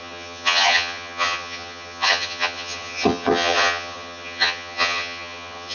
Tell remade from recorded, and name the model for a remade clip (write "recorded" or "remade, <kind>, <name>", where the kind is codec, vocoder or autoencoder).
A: remade, vocoder, HiFi-GAN